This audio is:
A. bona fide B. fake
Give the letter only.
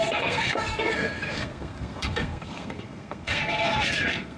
B